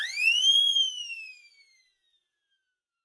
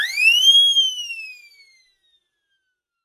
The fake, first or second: first